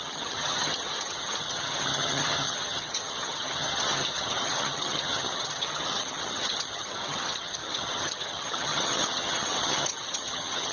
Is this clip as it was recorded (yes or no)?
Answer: no